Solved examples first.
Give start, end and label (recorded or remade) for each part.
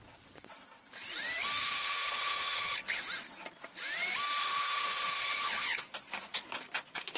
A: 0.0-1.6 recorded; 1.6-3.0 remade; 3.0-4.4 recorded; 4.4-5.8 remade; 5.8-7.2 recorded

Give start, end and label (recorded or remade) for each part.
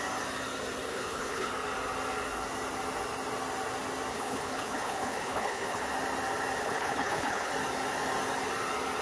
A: 0.0-0.9 recorded; 0.9-1.5 remade; 1.5-4.1 recorded; 4.1-5.8 remade; 5.8-6.6 recorded; 6.6-7.5 remade; 7.5-9.0 recorded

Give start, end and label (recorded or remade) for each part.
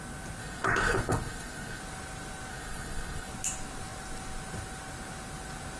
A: 0.0-0.4 recorded; 0.4-1.8 remade; 1.8-2.5 recorded; 2.5-3.3 remade; 3.3-5.8 recorded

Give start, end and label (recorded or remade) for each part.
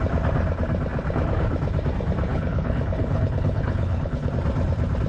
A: 0.0-2.3 recorded; 2.3-4.3 remade; 4.3-5.1 recorded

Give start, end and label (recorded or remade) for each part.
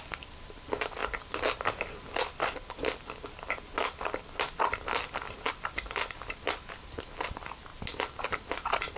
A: 0.0-9.0 recorded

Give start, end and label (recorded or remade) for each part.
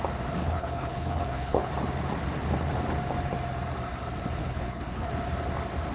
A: 0.0-0.4 recorded; 0.4-1.7 remade; 1.7-4.4 recorded; 4.4-5.1 remade; 5.1-5.9 recorded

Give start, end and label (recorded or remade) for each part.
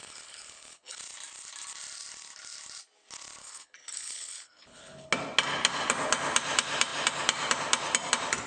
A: 0.0-1.0 remade; 1.0-3.4 recorded; 3.4-5.1 remade; 5.1-8.5 recorded